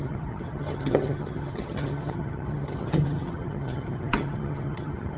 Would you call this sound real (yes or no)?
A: no